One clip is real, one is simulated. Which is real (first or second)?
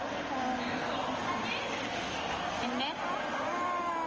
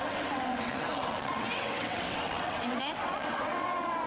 first